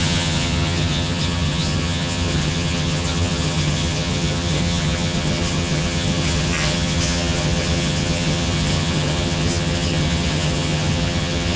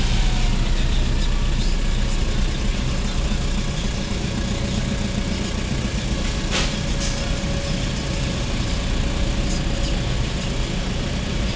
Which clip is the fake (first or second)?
first